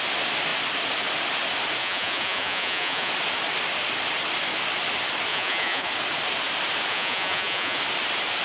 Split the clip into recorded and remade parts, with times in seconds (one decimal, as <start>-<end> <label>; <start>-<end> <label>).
0.0-1.8 recorded; 1.8-3.1 remade; 3.1-5.3 recorded; 5.3-5.9 remade; 5.9-6.9 recorded; 6.9-7.8 remade; 7.8-8.4 recorded